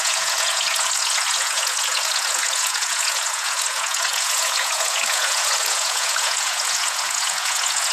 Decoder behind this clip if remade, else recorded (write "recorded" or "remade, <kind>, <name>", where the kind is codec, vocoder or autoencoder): remade, vocoder, Vocos